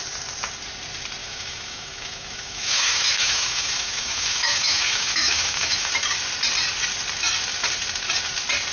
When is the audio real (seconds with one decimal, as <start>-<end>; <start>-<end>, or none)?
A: 0.0-1.2; 5.9-8.7